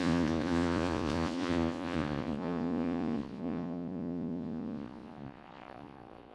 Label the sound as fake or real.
fake